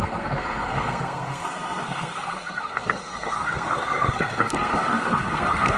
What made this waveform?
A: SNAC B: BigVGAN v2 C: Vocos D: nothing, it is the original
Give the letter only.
A